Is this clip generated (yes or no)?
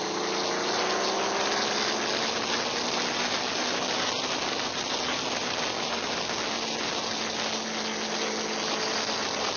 no